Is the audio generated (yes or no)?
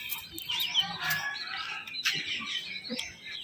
no